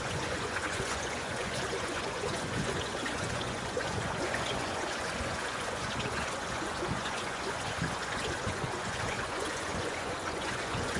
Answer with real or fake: fake